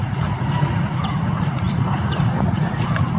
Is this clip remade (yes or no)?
yes